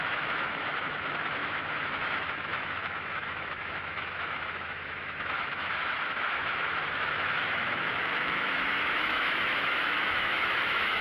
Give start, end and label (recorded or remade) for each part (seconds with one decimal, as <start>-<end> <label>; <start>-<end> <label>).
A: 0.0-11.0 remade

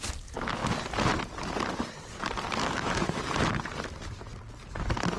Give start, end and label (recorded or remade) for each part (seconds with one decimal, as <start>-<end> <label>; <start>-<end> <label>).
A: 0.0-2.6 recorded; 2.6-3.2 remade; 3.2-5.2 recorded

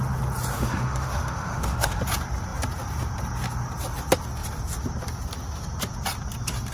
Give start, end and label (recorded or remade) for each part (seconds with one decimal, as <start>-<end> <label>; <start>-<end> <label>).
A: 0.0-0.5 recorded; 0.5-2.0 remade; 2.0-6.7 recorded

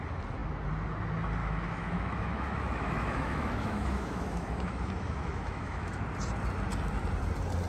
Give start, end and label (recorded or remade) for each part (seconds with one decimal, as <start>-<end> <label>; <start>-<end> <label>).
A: 0.0-1.4 recorded; 1.4-6.0 remade; 6.0-7.7 recorded

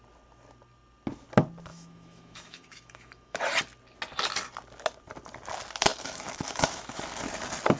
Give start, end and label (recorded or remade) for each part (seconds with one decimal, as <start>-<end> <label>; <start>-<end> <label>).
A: 0.0-1.7 recorded; 1.7-3.4 remade; 3.4-5.9 recorded; 5.9-7.0 remade; 7.0-7.8 recorded

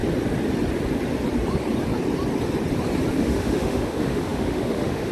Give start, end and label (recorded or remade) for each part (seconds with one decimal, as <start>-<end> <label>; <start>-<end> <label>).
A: 0.0-3.1 recorded; 3.1-5.1 remade